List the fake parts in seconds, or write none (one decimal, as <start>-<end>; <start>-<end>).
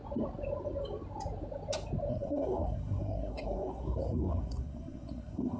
2.1-5.6